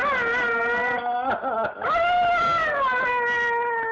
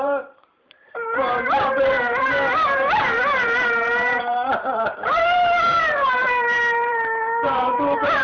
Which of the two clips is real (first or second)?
first